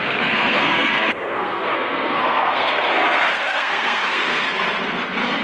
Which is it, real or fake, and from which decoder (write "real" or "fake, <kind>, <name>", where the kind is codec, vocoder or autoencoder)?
fake, codec, SNAC